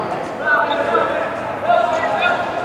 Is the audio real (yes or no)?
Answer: yes